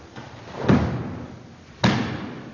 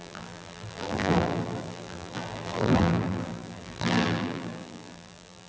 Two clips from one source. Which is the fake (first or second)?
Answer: second